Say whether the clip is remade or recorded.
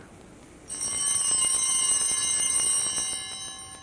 recorded